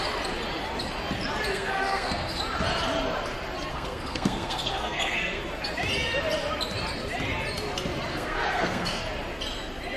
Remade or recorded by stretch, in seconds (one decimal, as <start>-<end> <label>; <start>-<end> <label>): 0.0-1.5 recorded; 1.5-2.4 remade; 2.4-3.7 recorded; 3.7-5.4 remade; 5.4-8.1 recorded; 8.1-9.0 remade; 9.0-10.0 recorded